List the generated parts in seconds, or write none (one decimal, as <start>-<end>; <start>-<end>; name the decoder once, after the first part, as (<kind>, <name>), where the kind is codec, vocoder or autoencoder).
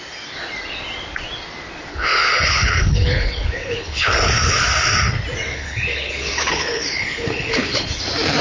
1.9-4.6 (codec, HILCodec); 5.5-8.0